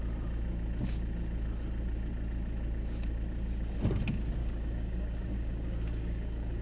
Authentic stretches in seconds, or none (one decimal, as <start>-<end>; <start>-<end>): 0.0-4.4